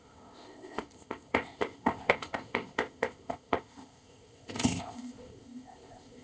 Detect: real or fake fake